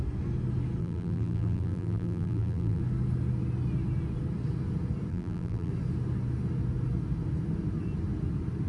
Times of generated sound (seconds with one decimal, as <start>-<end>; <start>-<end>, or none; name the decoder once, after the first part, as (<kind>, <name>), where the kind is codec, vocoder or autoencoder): 0.8-2.8 (vocoder, BigVGAN v2); 5.1-5.7

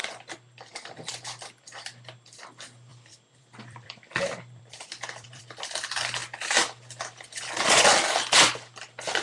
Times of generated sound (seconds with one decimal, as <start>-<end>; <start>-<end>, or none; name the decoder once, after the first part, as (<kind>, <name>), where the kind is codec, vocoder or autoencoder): 2.9-5.4 (vocoder, BigVGAN v2)

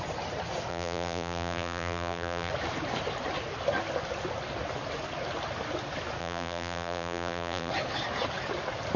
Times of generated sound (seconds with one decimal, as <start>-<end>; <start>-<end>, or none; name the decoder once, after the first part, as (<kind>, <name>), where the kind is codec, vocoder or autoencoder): 0.7-2.5 (vocoder, BigVGAN v2); 6.2-7.7

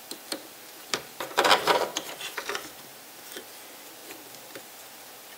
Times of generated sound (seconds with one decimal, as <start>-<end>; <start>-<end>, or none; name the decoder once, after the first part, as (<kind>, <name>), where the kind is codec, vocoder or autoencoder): 0.0-1.9 (vocoder, BigVGAN v2); 3.2-4.0; 4.6-5.4

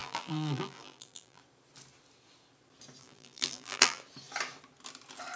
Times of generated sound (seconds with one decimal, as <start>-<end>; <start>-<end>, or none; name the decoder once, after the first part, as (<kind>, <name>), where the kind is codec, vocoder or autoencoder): 0.0-1.4 (vocoder, BigVGAN v2); 3.0-4.0